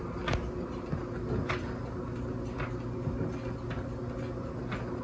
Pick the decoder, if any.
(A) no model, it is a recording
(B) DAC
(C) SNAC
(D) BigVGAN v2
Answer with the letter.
A